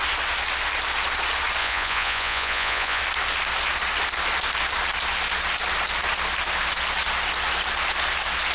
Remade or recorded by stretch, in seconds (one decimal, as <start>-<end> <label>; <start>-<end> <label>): 0.0-1.6 recorded; 1.6-3.0 remade; 3.0-8.5 recorded